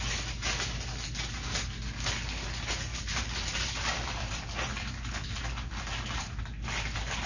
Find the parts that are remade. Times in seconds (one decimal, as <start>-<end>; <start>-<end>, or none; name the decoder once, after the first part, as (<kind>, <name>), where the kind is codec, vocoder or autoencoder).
2.9-6.4 (vocoder, BigVGAN v2)